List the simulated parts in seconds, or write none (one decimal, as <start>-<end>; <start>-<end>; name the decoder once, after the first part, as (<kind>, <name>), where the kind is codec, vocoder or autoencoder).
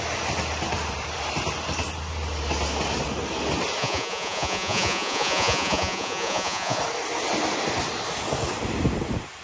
3.8-6.8 (vocoder, Vocos)